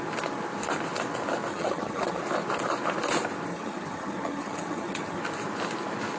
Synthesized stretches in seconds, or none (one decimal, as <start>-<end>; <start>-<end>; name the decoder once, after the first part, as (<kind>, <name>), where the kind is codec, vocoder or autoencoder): 1.5-2.2 (vocoder, HiFi-GAN); 3.5-5.2

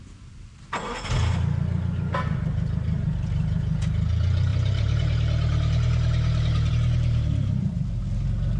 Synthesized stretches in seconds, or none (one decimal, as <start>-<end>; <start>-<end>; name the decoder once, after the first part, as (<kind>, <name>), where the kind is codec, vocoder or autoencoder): 4.5-6.7 (vocoder, BigVGAN v2)

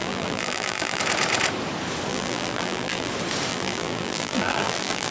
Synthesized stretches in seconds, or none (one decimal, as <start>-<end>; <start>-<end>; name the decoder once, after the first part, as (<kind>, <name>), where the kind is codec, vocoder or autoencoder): 0.0-1.0 (vocoder, BigVGAN v2); 2.1-3.1; 3.5-5.1